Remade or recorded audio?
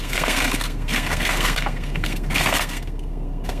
remade